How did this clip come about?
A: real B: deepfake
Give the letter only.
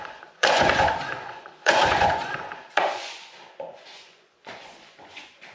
B